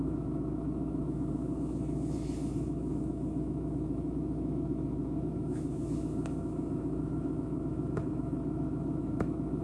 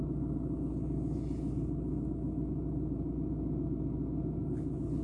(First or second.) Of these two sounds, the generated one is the first